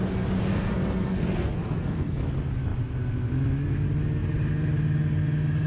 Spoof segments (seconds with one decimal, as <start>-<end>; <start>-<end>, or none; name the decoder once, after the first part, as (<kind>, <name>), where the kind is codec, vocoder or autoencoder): 0.5-2.3 (codec, SNAC)